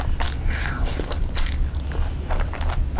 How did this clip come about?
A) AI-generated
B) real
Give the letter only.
B